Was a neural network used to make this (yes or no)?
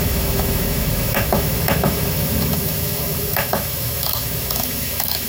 yes